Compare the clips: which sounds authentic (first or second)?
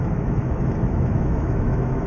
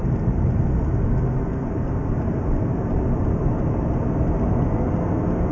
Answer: second